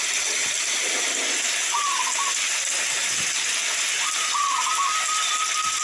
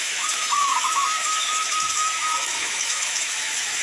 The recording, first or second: first